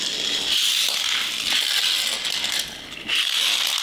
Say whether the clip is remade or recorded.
recorded